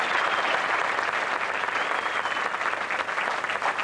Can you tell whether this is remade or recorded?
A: recorded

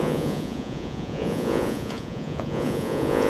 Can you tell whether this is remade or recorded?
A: remade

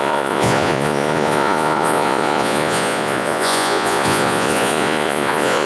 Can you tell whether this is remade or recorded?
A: remade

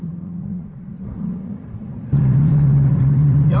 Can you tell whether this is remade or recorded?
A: remade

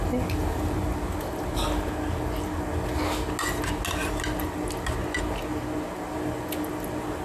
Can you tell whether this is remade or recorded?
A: recorded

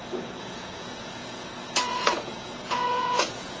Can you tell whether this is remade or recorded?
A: remade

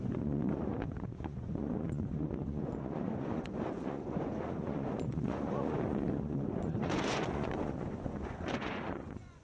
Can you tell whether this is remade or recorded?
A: remade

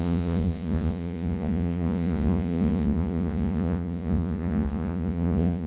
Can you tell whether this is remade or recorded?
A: remade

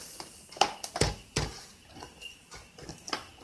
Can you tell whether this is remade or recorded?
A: recorded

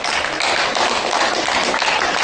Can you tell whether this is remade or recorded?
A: recorded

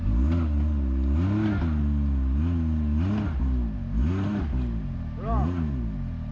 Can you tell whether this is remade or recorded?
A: recorded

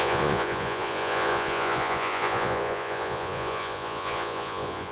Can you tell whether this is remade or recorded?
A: remade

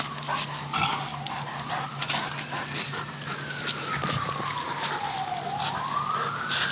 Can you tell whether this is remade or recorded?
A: recorded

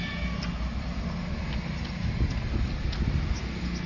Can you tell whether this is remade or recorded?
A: recorded